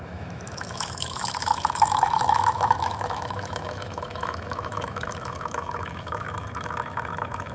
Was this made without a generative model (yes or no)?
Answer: no